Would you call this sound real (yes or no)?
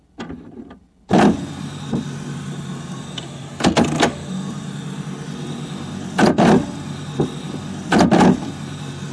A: yes